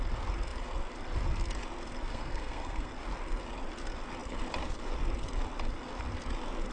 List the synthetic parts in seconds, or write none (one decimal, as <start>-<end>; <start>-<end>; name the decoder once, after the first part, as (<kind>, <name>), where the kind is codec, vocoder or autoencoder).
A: 2.1-2.9 (codec, SNAC)